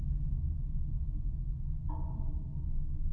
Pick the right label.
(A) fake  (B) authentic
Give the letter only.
B